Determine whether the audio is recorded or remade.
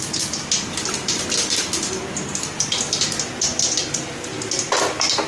recorded